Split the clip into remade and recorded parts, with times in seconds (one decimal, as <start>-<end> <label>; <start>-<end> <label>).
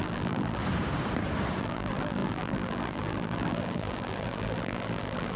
0.0-0.6 remade; 0.6-1.6 recorded; 1.6-5.4 remade